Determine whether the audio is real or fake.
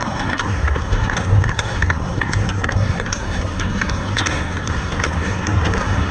fake